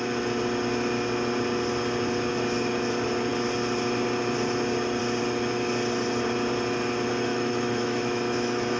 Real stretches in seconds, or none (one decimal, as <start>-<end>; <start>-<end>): 0.0-7.3